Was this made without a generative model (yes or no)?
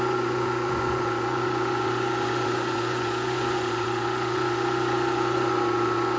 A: no